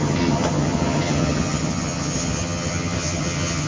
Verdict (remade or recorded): remade